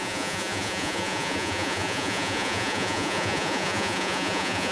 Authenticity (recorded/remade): remade